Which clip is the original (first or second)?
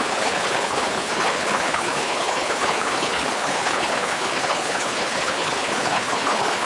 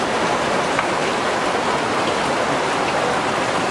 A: second